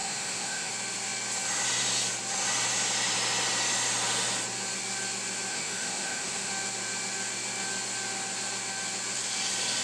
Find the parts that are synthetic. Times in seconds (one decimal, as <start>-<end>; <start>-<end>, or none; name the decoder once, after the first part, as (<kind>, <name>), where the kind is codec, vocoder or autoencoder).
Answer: 0.0-0.7 (autoencoder, DAC-VAE); 5.5-6.5